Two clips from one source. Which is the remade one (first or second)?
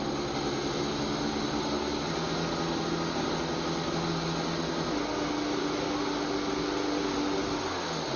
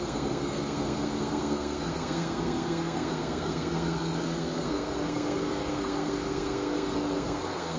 second